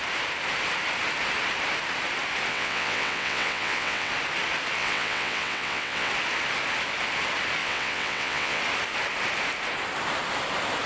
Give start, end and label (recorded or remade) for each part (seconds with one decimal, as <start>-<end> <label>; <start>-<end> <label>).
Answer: 0.0-2.5 recorded; 2.5-4.1 remade; 4.1-4.8 recorded; 4.8-6.1 remade; 6.1-7.6 recorded; 7.6-8.6 remade; 8.6-10.9 recorded